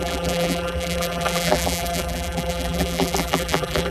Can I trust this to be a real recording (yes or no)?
no